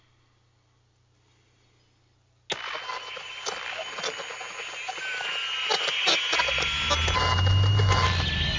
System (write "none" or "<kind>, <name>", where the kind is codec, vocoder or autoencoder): none